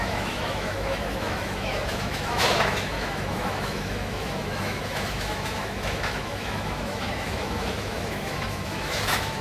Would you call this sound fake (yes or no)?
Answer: yes